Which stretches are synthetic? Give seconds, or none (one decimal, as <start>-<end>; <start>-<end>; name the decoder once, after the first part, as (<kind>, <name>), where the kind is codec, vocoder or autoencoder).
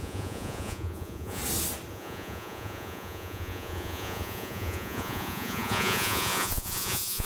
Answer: 0.0-1.4 (vocoder, Vocos); 1.9-7.3